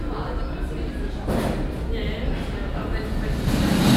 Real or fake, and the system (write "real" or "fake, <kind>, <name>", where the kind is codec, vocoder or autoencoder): real